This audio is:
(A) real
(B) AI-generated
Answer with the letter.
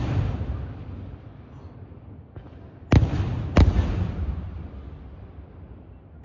A